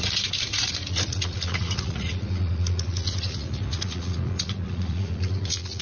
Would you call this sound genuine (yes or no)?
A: no